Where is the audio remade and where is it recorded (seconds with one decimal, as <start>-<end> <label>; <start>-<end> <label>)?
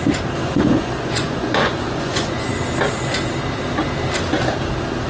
0.0-0.4 recorded; 0.4-2.5 remade; 2.5-5.1 recorded